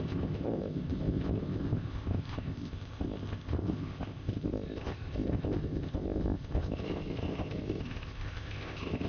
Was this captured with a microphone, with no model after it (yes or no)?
no